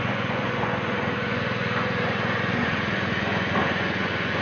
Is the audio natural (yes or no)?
no